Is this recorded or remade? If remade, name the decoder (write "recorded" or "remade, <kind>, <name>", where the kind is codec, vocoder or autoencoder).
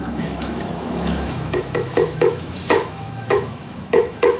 remade, autoencoder, DAC-VAE